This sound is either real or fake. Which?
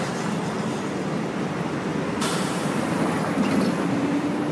real